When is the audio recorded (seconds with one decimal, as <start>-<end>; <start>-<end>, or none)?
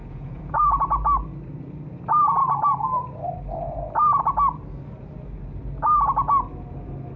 0.6-7.2